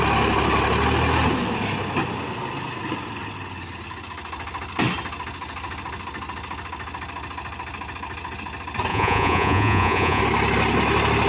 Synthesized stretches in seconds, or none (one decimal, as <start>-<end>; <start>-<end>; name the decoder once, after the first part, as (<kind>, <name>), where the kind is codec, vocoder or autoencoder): 8.9-10.2 (vocoder, Vocos)